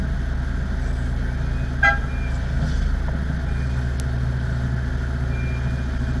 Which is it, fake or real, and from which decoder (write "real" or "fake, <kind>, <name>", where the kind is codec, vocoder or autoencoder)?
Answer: real